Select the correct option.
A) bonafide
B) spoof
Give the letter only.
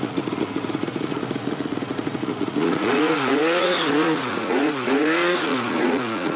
B